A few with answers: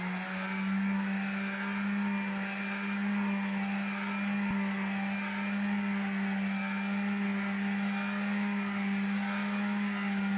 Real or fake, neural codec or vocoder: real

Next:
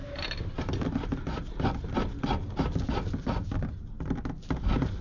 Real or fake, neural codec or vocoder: real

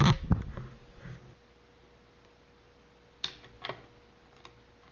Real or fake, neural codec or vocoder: real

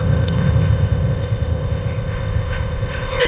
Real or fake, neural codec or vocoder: fake, codec, ZipCodec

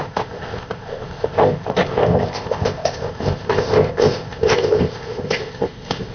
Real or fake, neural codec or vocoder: fake, codec, ZipCodec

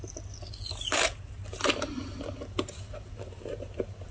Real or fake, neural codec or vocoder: real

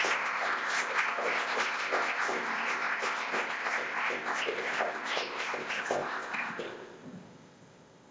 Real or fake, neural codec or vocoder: fake, codec, ZipCodec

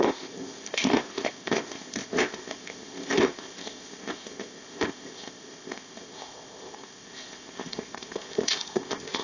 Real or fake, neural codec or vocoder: fake, codec, ZipCodec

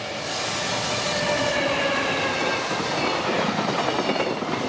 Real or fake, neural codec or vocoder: real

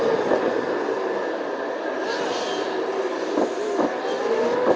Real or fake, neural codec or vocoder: real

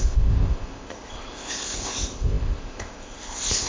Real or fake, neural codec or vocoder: fake, codec, ZipCodec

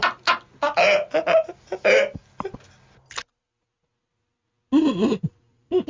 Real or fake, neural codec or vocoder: real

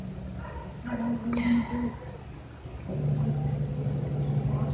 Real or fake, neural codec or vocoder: real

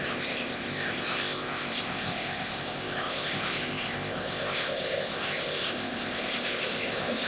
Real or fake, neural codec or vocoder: fake, codec, ZipCodec